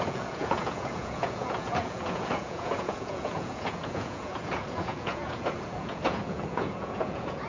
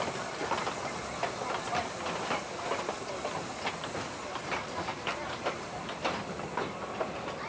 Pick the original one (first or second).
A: second